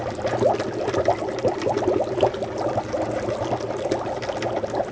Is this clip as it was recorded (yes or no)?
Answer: yes